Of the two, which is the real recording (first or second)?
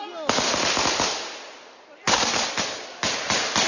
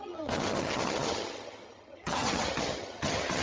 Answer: first